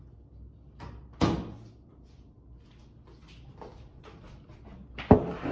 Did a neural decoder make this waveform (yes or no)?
no